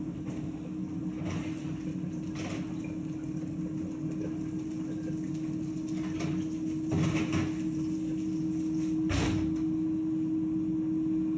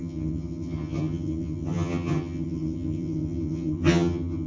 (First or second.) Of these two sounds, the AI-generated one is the second